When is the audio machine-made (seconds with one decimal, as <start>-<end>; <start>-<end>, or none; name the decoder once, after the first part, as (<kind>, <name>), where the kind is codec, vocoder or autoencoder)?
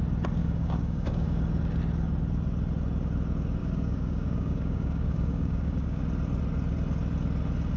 0.4-1.4 (codec, DAC); 3.6-6.0